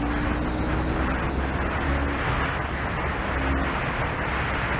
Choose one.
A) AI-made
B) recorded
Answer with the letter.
B